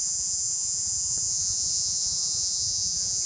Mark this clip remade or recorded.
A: remade